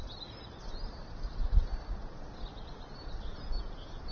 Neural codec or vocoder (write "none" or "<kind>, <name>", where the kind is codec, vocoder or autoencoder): none